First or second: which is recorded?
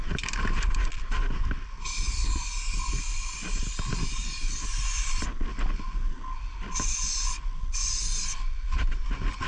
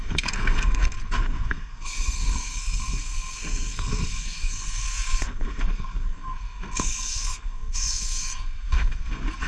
first